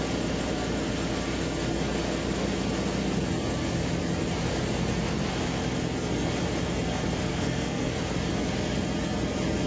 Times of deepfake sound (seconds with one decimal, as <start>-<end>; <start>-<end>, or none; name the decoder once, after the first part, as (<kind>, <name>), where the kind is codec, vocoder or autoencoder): 7.3-8.0 (codec, SNAC)